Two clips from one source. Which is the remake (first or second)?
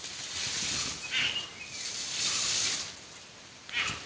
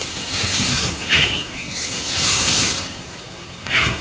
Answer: second